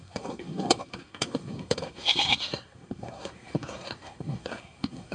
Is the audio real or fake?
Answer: fake